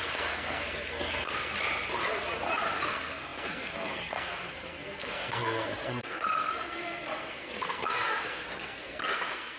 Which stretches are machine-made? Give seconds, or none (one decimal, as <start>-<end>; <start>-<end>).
0.0-1.5; 2.9-9.6